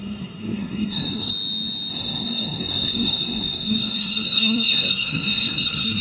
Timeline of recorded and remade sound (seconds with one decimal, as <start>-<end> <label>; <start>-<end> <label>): 0.0-1.3 remade; 1.3-1.9 recorded; 1.9-6.0 remade